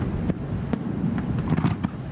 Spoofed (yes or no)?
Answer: no